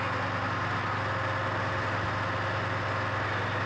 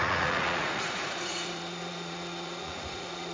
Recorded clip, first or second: first